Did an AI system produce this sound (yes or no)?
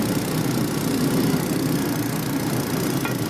no